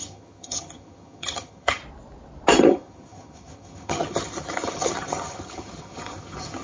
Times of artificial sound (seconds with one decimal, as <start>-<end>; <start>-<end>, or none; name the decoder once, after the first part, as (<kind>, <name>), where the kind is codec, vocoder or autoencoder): 0.0-1.8 (vocoder, HiFi-GAN); 2.6-6.6